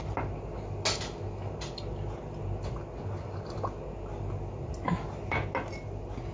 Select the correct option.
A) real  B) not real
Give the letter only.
A